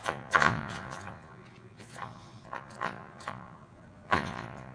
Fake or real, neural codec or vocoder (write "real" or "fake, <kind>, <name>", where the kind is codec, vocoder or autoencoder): fake, vocoder, Vocos